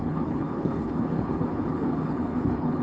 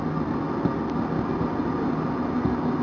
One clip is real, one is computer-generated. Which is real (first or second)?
second